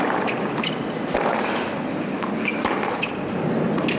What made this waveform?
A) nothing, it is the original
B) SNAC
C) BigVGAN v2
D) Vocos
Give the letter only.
A